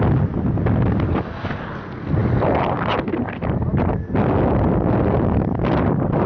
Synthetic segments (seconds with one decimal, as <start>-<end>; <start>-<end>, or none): none